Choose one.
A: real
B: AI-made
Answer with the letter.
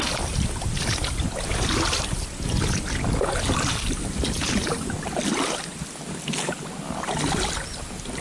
A